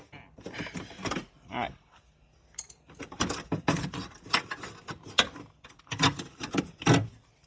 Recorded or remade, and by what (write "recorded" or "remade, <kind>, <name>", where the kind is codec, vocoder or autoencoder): recorded